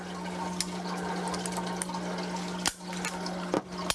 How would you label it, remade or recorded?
recorded